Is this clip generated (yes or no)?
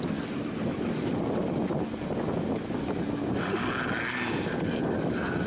no